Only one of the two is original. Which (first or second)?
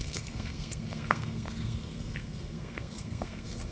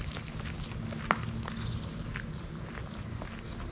second